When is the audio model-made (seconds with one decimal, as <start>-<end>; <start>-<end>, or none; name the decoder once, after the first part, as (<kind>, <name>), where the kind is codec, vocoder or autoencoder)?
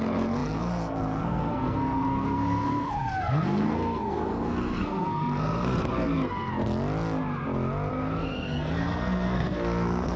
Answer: 0.0-6.5 (codec, SNAC); 7.9-10.2